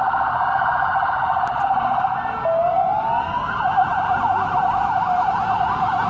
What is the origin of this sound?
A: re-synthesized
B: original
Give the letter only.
B